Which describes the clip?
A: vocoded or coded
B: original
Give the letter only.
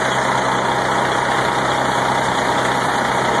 B